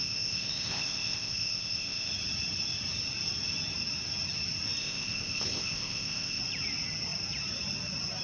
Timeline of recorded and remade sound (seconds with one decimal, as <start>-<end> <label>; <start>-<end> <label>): 0.0-2.1 remade; 2.1-4.8 recorded; 4.8-6.4 remade; 6.4-8.2 recorded